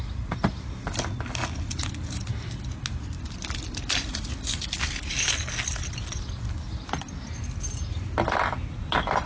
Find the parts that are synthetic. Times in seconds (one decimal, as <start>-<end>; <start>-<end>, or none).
none

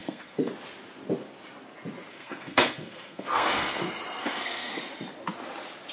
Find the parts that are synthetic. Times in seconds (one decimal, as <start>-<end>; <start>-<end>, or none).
0.0-0.5; 2.1-3.8; 4.2-4.8

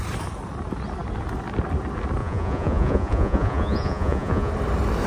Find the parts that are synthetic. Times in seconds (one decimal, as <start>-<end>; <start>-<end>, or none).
2.2-4.5

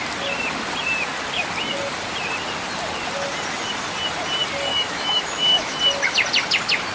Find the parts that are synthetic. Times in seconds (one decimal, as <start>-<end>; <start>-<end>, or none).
4.7-5.8